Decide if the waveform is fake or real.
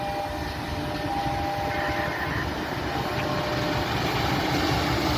real